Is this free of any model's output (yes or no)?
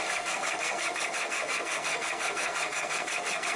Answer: no